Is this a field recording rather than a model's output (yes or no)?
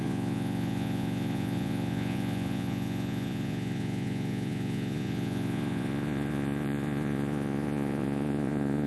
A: no